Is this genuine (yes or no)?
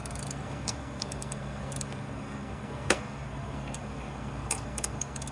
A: no